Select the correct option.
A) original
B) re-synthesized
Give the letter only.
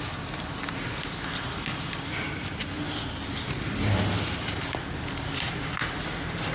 A